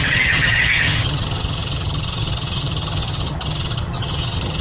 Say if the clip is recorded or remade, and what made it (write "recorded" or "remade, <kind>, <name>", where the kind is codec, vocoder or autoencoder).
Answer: remade, vocoder, HiFi-GAN